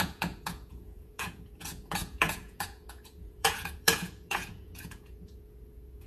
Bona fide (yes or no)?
no